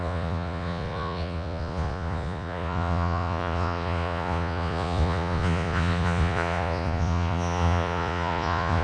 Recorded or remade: remade